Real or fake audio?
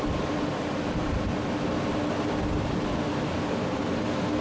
real